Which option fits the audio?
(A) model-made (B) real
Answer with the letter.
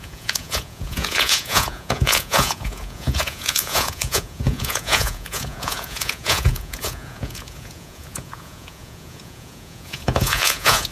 A